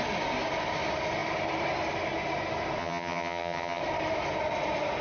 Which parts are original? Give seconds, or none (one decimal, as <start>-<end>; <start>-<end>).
0.0-2.8; 3.8-5.0